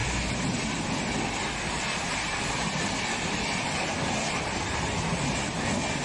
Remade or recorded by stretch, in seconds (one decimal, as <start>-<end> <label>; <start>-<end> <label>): 0.0-3.6 remade; 3.6-6.0 recorded